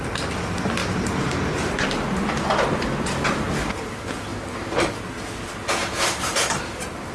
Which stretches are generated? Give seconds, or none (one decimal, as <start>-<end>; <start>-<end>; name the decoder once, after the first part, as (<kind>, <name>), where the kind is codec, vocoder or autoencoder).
0.8-3.5 (vocoder, BigVGAN v2); 4.3-5.0; 5.8-6.6